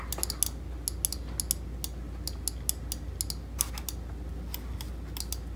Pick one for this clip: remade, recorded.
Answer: recorded